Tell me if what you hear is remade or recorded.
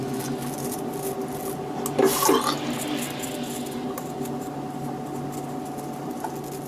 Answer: recorded